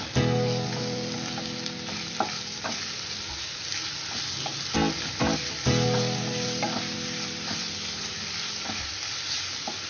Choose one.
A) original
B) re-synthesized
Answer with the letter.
A